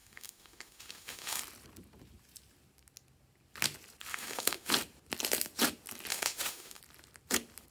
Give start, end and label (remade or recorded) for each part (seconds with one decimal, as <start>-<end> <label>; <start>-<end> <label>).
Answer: 0.0-1.4 remade; 1.4-4.1 recorded; 4.1-4.7 remade; 4.7-6.1 recorded; 6.1-6.8 remade; 6.8-7.7 recorded